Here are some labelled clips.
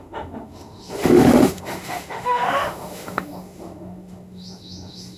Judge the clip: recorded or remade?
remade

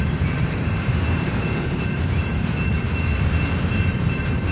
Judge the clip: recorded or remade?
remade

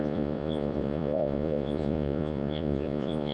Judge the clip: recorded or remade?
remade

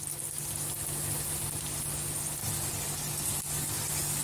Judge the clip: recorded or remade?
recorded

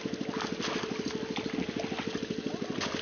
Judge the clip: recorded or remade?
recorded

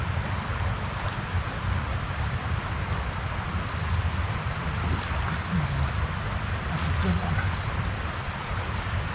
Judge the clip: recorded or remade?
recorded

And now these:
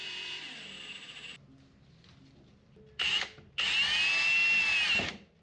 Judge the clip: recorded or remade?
recorded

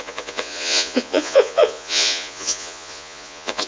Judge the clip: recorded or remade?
remade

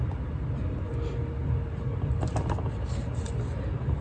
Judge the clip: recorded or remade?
recorded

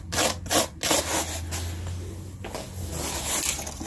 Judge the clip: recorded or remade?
recorded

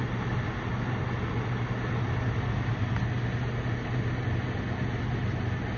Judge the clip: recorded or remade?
recorded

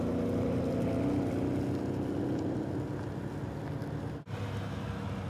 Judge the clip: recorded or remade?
recorded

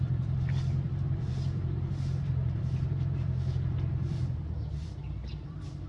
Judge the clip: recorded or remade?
remade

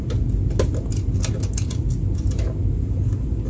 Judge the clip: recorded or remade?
recorded